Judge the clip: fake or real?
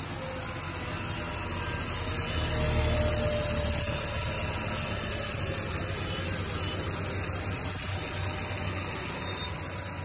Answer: real